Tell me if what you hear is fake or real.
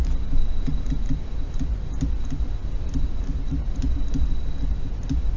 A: real